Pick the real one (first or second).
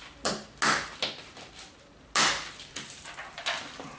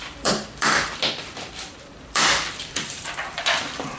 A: first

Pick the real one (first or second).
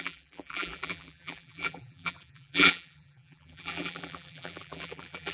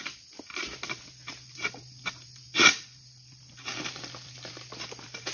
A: second